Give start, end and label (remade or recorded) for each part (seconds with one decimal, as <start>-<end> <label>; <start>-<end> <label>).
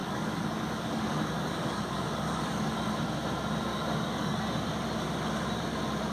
0.0-2.7 remade; 2.7-3.7 recorded; 3.7-4.4 remade; 4.4-6.1 recorded